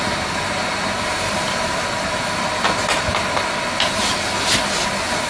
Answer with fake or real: real